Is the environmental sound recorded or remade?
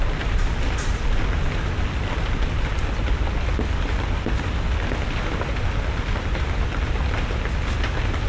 recorded